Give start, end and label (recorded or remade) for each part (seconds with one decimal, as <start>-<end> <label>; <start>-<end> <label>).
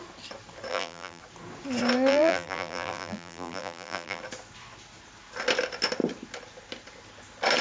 0.0-0.7 recorded; 0.7-1.2 remade; 1.2-2.1 recorded; 2.1-4.2 remade; 4.2-7.6 recorded